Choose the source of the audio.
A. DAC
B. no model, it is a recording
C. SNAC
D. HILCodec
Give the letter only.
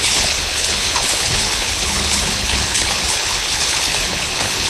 D